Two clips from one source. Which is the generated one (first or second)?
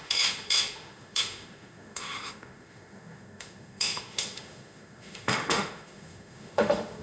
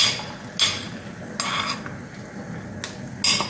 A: first